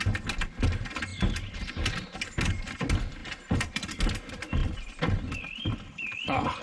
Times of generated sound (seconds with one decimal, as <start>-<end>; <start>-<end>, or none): 3.2-4.0; 4.6-6.6